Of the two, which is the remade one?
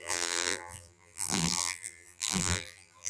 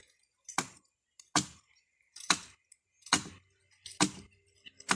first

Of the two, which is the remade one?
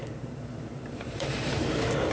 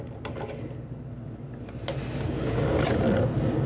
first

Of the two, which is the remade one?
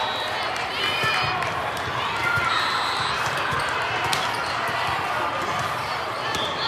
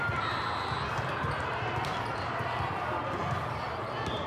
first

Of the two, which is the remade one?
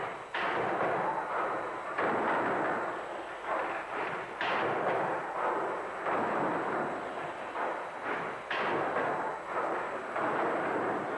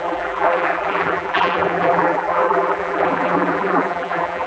second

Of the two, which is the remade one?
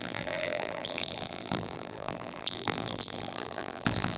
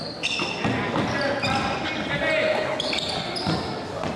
first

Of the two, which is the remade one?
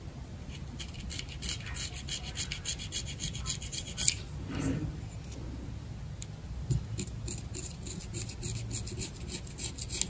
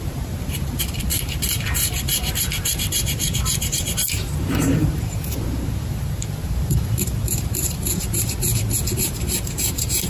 second